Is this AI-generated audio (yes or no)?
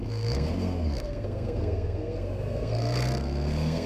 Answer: yes